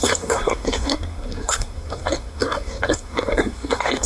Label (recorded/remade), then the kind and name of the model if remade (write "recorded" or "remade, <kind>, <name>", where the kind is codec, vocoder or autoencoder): remade, codec, SNAC